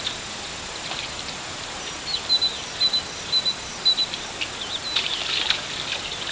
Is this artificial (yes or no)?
no